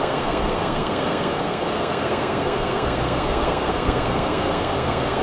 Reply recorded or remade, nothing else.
remade